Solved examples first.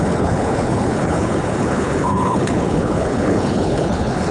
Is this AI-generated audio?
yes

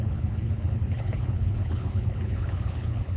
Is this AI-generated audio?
yes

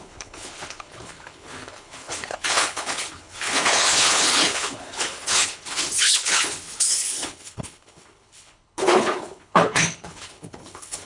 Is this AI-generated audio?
yes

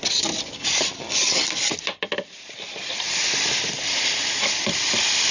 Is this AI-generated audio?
no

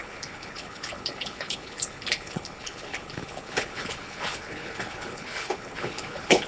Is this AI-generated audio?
yes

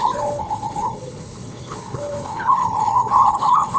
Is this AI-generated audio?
yes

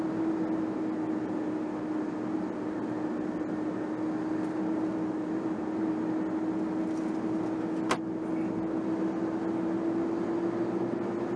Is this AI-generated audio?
no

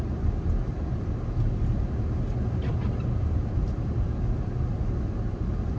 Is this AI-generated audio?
no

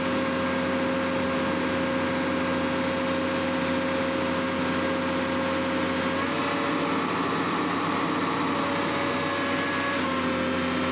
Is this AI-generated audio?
no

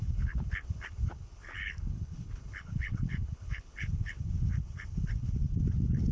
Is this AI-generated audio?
yes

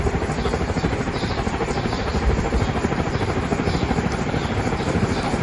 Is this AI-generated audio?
no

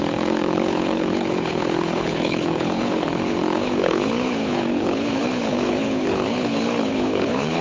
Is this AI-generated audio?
yes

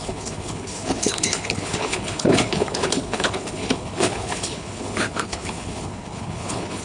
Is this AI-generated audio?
yes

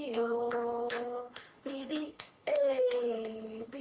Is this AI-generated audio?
yes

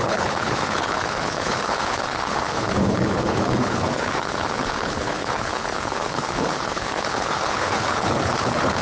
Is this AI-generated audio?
yes